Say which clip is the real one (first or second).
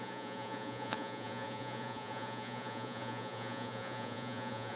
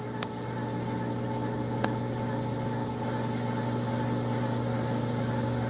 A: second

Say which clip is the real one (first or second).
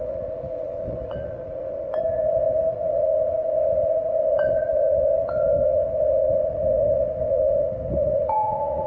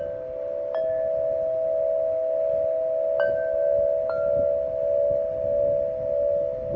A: second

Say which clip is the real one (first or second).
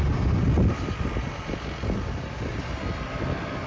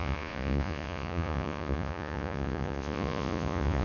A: first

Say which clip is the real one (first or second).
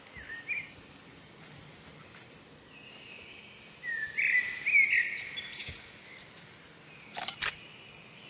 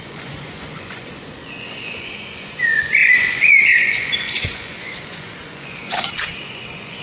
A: first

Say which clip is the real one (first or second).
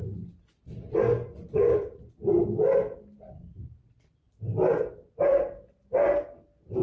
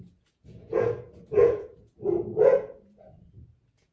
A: first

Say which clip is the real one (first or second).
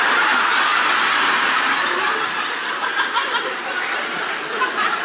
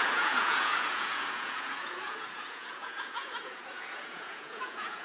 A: first